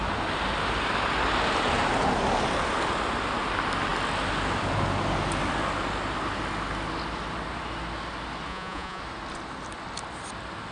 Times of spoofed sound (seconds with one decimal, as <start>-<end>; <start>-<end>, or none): 8.5-9.0